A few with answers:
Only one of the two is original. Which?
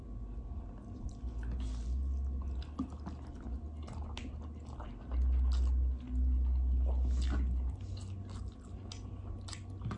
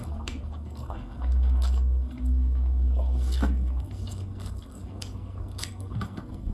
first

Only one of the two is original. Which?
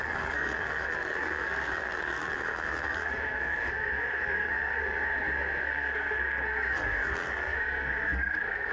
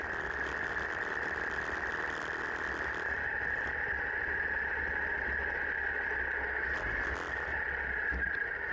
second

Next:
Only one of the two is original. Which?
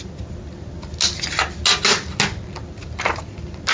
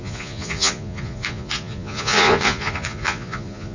first